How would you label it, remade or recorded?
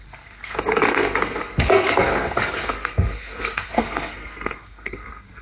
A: remade